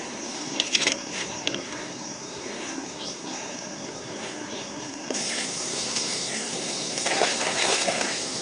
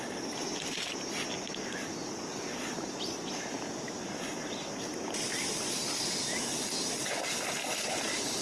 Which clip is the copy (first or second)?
first